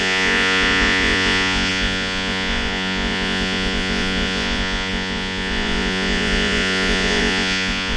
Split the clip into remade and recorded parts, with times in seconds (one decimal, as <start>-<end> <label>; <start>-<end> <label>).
0.0-8.0 remade